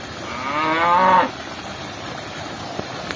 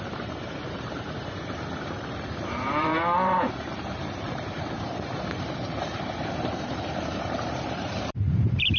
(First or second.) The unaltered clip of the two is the first